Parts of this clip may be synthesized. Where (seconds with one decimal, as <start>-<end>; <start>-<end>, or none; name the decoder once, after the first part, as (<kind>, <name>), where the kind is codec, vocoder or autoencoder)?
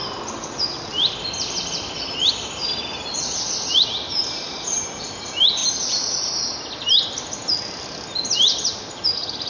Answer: 4.1-5.1 (vocoder, BigVGAN v2); 5.6-6.4